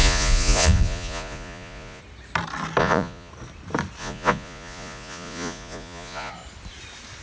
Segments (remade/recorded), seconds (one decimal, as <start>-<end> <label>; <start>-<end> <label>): 0.0-2.0 remade; 2.0-2.8 recorded; 2.8-3.3 remade; 3.3-4.0 recorded; 4.0-6.3 remade; 6.3-7.2 recorded